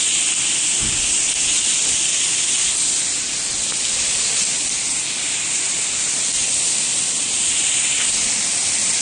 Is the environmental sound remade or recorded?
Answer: recorded